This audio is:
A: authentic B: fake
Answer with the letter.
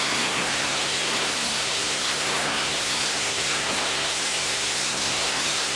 B